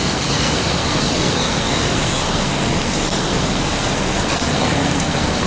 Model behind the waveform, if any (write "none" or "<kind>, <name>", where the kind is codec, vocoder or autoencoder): codec, SNAC